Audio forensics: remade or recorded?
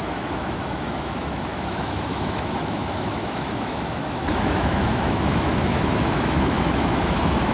remade